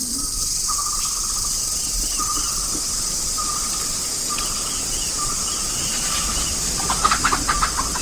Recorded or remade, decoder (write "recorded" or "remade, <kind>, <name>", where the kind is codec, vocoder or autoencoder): remade, vocoder, BigVGAN v2